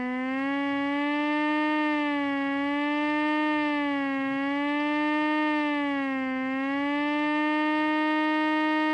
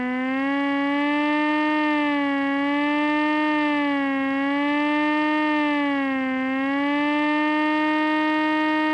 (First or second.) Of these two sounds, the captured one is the second